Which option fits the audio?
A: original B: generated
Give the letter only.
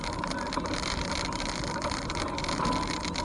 A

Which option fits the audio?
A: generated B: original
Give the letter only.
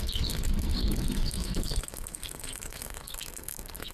A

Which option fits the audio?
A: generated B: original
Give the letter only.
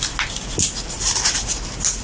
B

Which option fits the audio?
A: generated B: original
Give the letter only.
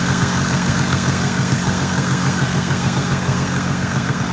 A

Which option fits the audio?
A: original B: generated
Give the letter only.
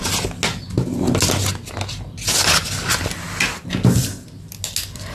A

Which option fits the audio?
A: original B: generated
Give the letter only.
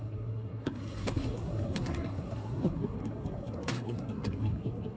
B